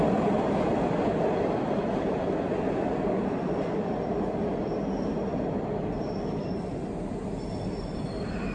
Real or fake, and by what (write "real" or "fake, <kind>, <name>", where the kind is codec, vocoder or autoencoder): real